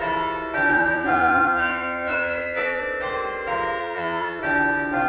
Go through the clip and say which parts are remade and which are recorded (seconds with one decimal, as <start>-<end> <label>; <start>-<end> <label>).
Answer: 0.0-0.7 recorded; 0.7-2.8 remade; 2.8-3.8 recorded; 3.8-4.4 remade; 4.4-5.1 recorded